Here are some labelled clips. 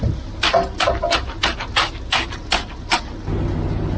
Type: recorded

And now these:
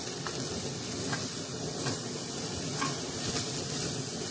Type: recorded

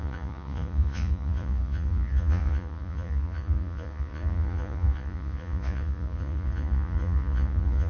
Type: remade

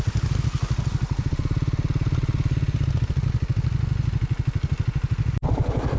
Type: recorded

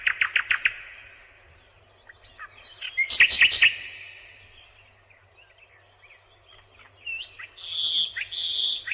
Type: recorded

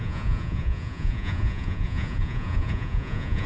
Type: remade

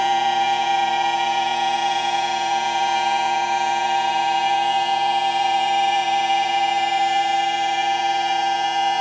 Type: remade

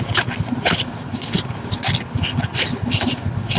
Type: recorded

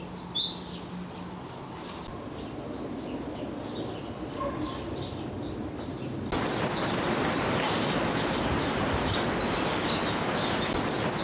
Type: recorded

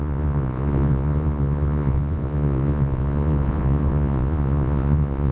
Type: remade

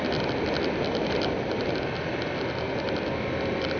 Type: recorded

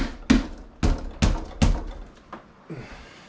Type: recorded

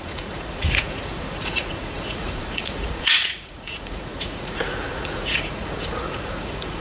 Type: remade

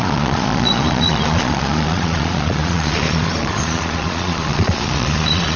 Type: remade